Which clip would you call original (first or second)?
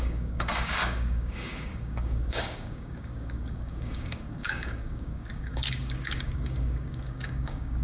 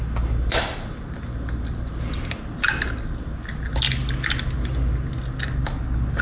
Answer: second